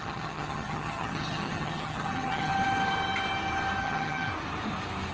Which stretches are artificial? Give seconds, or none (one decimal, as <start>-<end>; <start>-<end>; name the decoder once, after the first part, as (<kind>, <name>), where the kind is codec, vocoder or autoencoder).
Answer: 0.0-2.5 (vocoder, HiFi-GAN); 3.8-4.3